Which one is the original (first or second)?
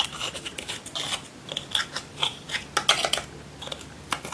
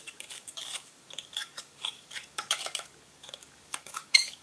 first